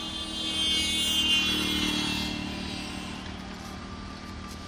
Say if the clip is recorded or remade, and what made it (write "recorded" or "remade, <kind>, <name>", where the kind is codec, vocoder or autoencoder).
recorded